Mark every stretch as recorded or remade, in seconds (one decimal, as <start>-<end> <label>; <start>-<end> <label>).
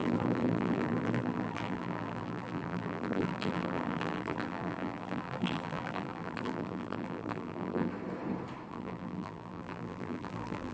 0.0-7.9 remade; 7.9-8.7 recorded; 8.7-10.7 remade